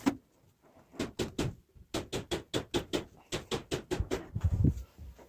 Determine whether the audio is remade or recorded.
recorded